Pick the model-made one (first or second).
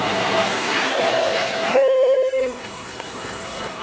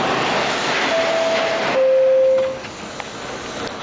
first